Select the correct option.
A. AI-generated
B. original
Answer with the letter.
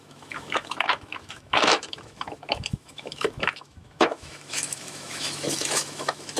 A